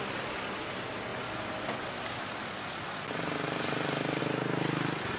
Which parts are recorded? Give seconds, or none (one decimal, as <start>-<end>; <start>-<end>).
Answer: 0.0-5.2